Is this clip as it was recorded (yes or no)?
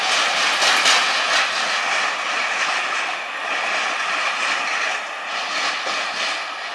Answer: yes